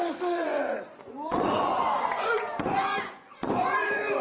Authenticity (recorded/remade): remade